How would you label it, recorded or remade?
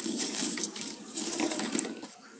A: remade